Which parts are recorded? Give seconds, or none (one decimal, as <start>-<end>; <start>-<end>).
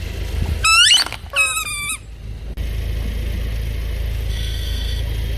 0.0-4.3; 5.0-5.4